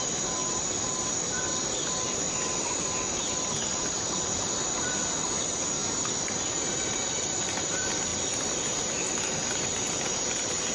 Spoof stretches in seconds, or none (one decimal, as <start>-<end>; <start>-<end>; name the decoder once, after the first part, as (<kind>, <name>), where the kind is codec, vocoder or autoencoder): 0.4-2.3 (vocoder, BigVGAN v2); 5.8-6.4